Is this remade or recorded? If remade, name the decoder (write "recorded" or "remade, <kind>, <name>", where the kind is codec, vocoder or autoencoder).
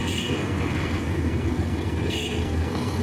remade, codec, SNAC